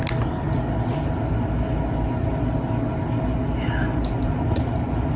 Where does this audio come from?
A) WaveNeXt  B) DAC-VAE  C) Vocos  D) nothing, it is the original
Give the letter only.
D